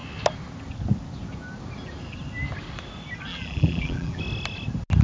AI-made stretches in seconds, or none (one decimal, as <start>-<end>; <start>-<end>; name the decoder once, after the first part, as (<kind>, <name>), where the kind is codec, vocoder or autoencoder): 3.3-4.2 (vocoder, BigVGAN v2)